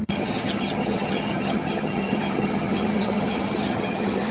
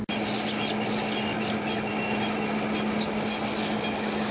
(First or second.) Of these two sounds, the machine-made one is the first